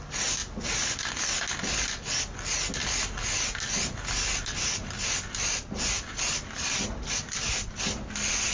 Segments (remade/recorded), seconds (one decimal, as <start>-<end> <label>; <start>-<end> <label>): 0.0-8.5 recorded